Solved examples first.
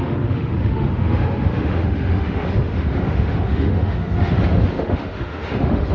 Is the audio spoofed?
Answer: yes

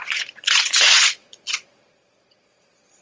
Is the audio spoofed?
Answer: yes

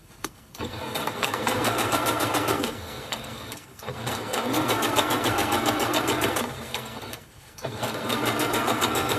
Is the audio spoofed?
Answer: yes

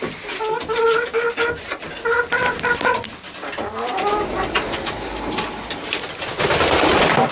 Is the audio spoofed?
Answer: no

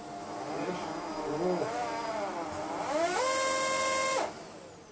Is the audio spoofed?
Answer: no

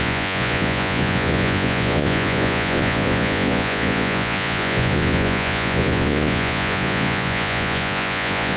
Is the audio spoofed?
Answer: yes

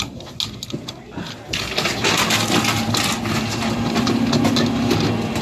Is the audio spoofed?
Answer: no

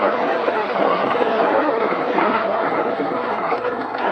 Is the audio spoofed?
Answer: yes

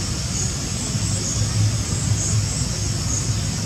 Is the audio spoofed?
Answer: no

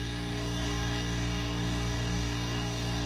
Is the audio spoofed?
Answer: yes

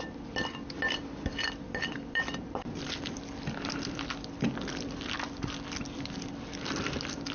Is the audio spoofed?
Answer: no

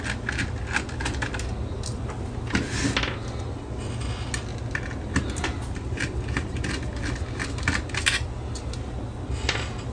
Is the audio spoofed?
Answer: no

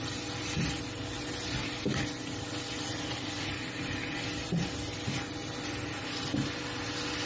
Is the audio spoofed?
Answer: no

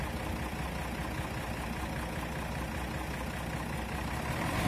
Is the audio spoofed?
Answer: no